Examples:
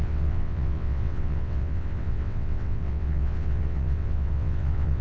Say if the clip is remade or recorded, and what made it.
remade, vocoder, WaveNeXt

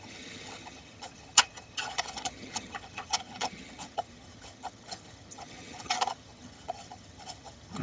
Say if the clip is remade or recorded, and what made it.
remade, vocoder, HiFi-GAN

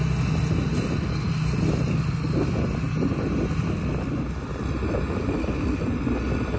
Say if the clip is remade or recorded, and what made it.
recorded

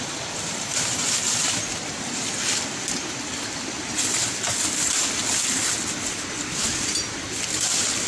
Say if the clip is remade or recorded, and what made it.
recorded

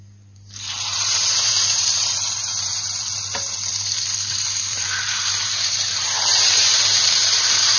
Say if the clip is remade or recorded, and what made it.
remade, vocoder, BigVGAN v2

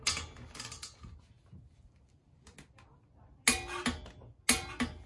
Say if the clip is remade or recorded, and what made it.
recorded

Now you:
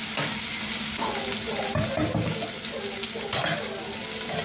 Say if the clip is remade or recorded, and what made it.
recorded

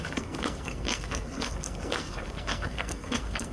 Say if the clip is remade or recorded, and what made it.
remade, codec, SNAC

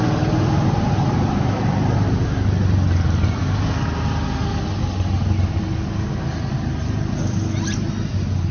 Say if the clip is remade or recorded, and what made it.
recorded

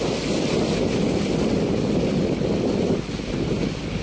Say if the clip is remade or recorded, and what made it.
recorded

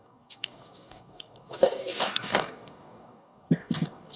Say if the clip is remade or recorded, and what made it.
remade, codec, DAC